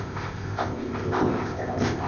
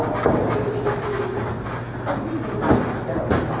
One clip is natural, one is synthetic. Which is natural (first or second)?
second